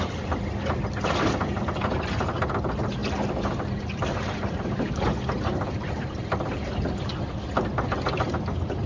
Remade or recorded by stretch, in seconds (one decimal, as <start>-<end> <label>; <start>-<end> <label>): 0.0-3.9 recorded; 3.9-7.5 remade; 7.5-8.9 recorded